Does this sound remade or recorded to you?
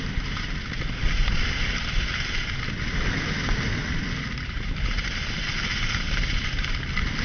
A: recorded